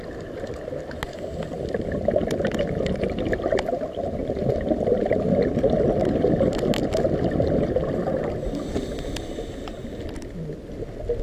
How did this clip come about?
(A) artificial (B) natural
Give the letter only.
B